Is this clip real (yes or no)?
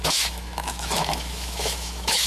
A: no